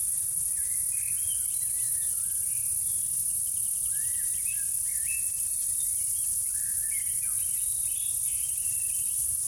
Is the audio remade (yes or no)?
no